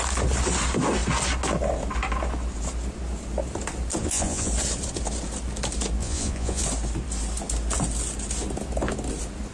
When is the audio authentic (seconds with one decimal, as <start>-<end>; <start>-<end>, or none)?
0.0-4.0; 4.5-6.0; 6.6-9.5